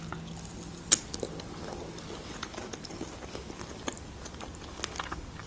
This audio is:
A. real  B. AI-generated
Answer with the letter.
A